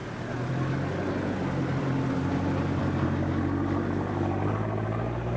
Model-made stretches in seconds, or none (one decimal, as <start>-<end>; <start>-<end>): 1.7-2.8